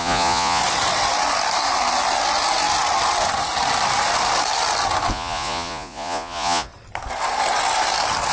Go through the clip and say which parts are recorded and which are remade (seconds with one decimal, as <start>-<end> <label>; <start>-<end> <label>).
0.0-0.6 remade; 0.6-5.1 recorded; 5.1-6.7 remade; 6.7-8.3 recorded